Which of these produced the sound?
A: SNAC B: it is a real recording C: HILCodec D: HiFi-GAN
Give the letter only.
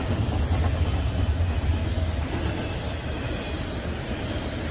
B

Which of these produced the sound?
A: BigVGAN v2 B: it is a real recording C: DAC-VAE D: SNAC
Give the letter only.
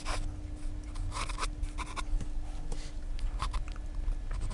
B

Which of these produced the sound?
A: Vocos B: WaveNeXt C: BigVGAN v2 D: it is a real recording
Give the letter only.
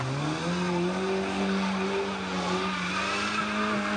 D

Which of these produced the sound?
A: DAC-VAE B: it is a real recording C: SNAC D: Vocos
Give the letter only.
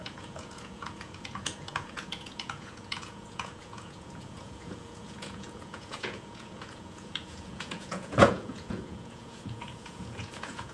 D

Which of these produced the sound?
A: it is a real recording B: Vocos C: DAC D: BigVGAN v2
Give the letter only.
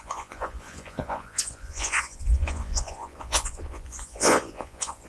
B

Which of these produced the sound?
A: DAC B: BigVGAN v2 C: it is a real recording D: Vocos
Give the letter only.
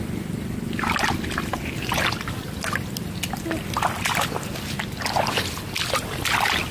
C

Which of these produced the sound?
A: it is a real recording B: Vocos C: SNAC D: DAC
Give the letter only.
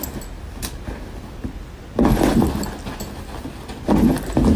A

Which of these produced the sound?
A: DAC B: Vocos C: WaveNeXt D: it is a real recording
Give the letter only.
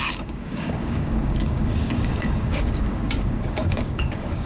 A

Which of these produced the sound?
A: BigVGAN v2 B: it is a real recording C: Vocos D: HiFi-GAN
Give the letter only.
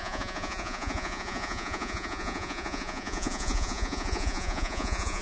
C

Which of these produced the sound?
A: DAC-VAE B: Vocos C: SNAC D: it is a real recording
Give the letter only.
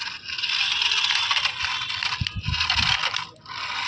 D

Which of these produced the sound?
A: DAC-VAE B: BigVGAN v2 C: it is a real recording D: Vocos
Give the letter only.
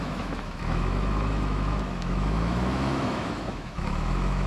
A